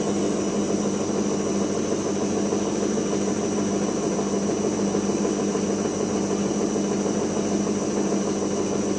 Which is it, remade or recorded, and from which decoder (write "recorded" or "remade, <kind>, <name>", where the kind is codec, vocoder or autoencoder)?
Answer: recorded